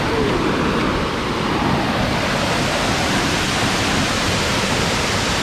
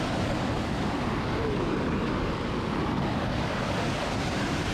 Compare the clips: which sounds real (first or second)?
first